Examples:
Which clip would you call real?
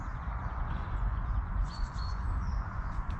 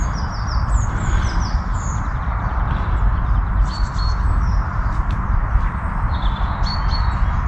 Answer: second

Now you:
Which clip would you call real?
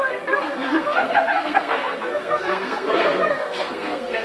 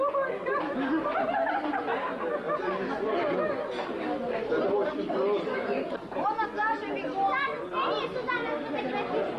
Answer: second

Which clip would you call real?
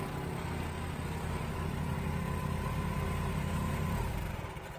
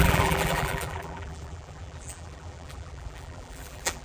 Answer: first